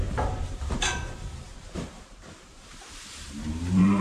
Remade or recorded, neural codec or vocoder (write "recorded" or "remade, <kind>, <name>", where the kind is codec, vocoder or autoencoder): remade, vocoder, BigVGAN v2